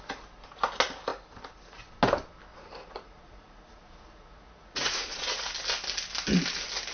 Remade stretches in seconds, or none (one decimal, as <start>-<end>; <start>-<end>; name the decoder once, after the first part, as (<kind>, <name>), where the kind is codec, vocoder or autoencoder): 2.5-5.5 (vocoder, Vocos)